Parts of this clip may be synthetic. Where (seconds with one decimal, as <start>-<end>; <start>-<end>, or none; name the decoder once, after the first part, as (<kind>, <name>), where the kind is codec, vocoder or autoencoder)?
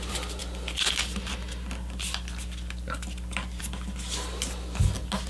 none